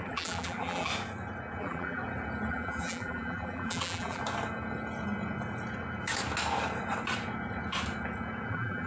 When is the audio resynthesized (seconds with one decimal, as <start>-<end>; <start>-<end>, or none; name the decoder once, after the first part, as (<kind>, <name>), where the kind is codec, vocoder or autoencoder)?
0.0-0.9 (vocoder, BigVGAN v2); 1.6-2.0; 2.5-4.2; 8.5-8.9